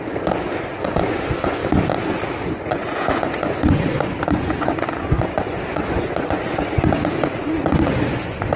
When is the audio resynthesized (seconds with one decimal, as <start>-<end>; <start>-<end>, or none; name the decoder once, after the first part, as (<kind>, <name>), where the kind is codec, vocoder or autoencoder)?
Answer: 0.0-1.6 (vocoder, Vocos); 2.4-8.6